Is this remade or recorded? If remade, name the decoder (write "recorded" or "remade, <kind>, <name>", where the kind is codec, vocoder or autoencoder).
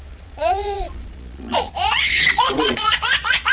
remade, vocoder, Vocos